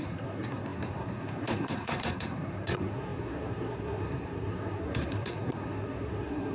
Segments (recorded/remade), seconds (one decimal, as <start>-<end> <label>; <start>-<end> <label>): 0.0-6.5 remade